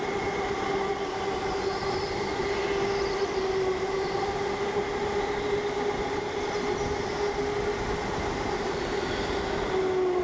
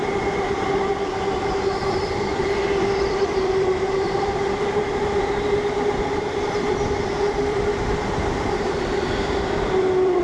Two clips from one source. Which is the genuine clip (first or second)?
first